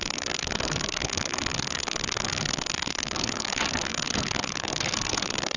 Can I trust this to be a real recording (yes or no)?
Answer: no